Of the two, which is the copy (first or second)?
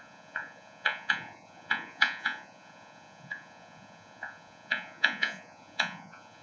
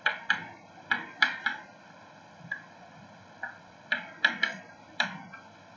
first